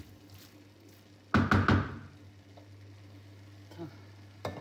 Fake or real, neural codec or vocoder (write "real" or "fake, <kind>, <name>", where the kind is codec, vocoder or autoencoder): real